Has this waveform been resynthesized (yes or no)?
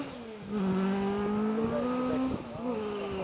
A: no